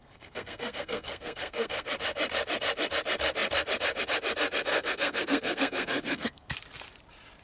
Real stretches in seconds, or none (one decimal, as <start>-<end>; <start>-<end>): 1.9-4.7; 6.5-7.4